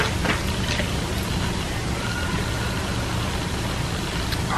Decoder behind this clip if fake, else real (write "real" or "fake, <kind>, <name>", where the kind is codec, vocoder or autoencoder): real